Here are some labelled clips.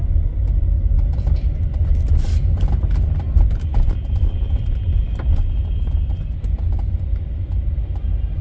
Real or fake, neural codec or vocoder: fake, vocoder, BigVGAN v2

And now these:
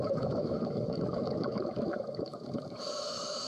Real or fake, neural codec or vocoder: fake, autoencoder, DAC-VAE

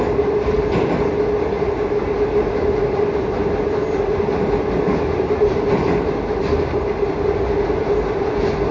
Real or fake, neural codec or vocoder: real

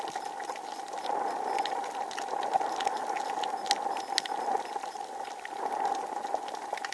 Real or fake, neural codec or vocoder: real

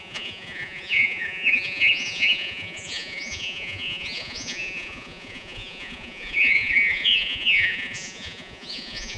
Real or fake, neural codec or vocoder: fake, vocoder, Vocos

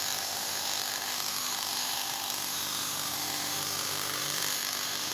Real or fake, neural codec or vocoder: fake, autoencoder, DAC-VAE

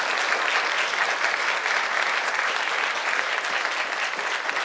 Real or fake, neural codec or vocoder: real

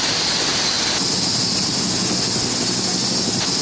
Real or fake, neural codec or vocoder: real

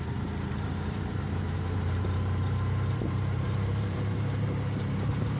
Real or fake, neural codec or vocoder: fake, vocoder, BigVGAN v2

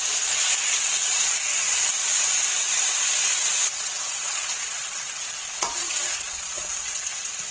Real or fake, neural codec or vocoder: fake, vocoder, Vocos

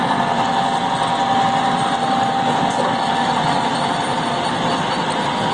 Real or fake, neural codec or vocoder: real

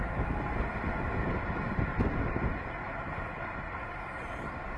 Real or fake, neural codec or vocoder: real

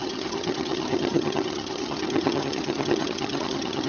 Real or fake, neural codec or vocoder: fake, vocoder, HiFi-GAN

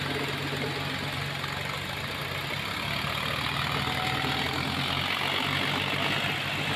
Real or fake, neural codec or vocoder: real